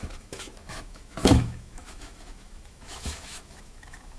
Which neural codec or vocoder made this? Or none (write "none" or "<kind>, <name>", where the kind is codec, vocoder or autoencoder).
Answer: autoencoder, DAC-VAE